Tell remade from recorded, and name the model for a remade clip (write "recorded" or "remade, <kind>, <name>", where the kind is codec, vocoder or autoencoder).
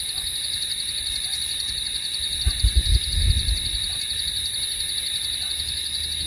recorded